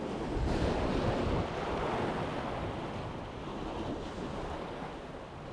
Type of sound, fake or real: real